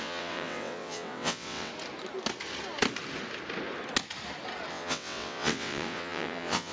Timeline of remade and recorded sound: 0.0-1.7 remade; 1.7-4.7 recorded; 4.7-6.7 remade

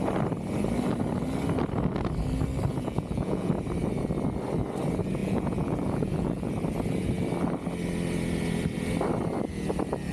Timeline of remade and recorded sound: 0.0-2.7 recorded; 2.7-3.5 remade; 3.5-5.2 recorded; 5.2-6.5 remade; 6.5-10.1 recorded

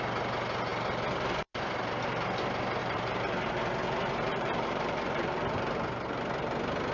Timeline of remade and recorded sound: 0.0-2.8 recorded; 2.8-3.5 remade; 3.5-4.3 recorded; 4.3-6.2 remade; 6.2-6.9 recorded

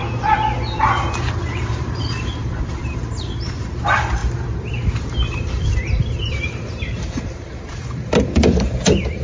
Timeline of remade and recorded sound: 0.0-0.8 recorded; 0.8-9.2 remade